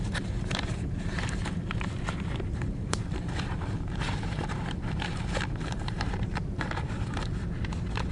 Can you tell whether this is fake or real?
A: fake